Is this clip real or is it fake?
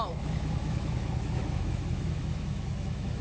fake